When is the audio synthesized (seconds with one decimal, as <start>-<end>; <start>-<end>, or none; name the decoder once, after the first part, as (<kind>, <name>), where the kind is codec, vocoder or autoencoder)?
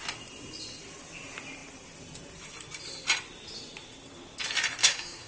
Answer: 4.8-5.3 (codec, DAC)